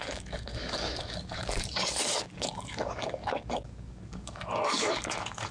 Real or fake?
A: fake